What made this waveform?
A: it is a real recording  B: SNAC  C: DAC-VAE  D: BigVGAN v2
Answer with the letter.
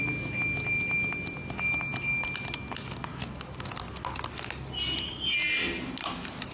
A